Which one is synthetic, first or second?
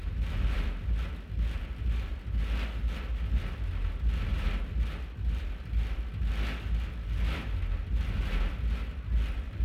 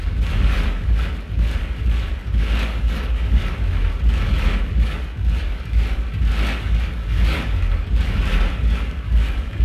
second